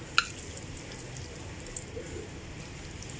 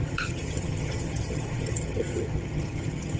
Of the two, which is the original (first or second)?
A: first